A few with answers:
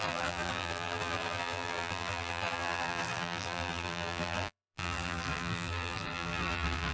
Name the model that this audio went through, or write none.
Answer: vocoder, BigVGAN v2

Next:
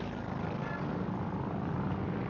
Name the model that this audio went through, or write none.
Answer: vocoder, BigVGAN v2